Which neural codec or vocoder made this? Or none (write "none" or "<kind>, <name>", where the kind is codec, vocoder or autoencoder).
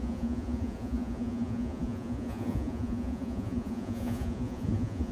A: vocoder, Vocos